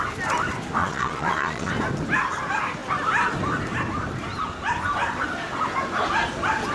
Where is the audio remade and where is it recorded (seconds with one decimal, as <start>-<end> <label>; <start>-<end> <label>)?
0.0-0.8 recorded; 0.8-1.7 remade; 1.7-6.7 recorded

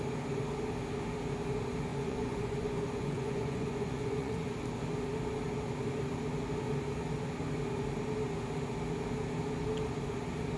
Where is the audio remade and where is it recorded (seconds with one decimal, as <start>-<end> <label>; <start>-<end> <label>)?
0.0-1.9 recorded; 1.9-4.5 remade; 4.5-10.6 recorded